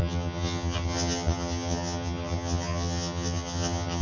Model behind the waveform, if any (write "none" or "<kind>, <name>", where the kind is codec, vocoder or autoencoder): vocoder, HiFi-GAN